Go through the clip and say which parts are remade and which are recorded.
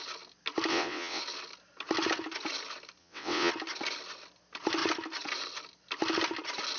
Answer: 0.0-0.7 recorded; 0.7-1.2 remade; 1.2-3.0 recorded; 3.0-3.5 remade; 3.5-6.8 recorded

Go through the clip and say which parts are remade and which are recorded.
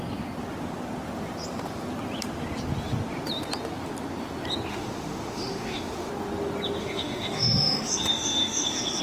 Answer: 0.0-4.7 recorded; 4.7-6.1 remade; 6.1-6.8 recorded; 6.8-9.0 remade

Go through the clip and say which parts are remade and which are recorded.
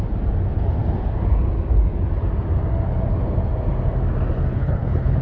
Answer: 0.0-4.5 recorded; 4.5-5.2 remade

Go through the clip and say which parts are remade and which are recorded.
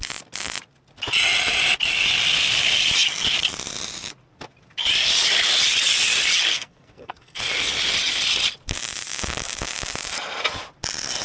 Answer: 0.0-6.5 recorded; 6.5-7.4 remade; 7.4-11.2 recorded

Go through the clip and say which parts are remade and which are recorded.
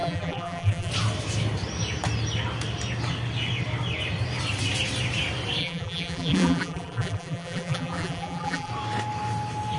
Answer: 0.0-0.9 remade; 0.9-5.6 recorded; 5.6-8.7 remade; 8.7-9.8 recorded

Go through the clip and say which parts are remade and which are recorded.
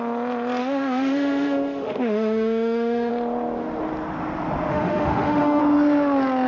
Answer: 0.0-0.6 recorded; 0.6-3.1 remade; 3.1-4.7 recorded; 4.7-5.6 remade; 5.6-6.5 recorded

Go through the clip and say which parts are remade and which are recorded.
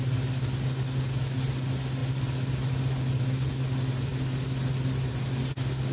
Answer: 0.0-5.9 recorded